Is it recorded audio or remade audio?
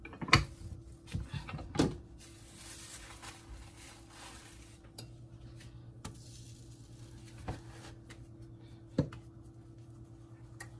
recorded